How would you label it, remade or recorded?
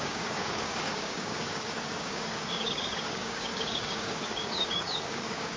remade